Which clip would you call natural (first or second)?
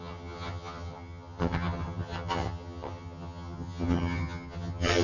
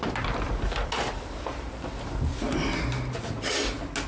second